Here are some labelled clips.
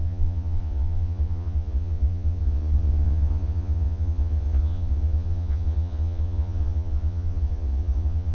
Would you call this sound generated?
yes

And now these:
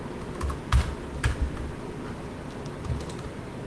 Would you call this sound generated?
no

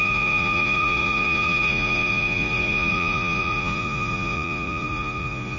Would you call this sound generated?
yes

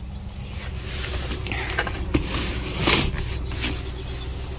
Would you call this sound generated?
no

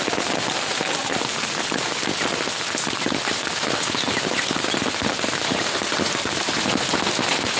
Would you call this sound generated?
no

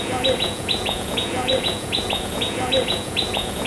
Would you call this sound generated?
yes